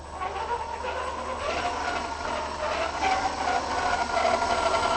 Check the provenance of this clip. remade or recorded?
recorded